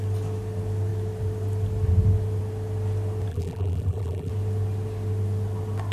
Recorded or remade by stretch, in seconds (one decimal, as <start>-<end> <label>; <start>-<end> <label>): 0.0-3.3 recorded; 3.3-4.3 remade; 4.3-5.9 recorded

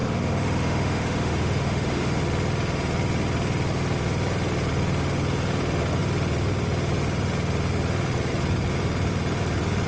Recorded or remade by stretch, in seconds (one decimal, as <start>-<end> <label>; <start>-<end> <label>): 0.0-2.2 remade; 2.2-9.9 recorded

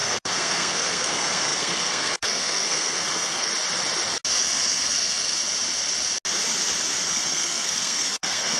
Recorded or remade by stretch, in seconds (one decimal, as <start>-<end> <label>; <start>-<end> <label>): 0.0-3.5 remade; 3.5-4.4 recorded; 4.4-5.4 remade; 5.4-7.1 recorded; 7.1-8.6 remade